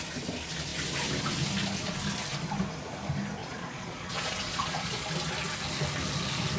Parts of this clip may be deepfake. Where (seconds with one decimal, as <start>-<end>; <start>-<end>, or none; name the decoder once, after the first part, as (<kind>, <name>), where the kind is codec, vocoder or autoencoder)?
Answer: 3.4-5.1 (vocoder, Vocos)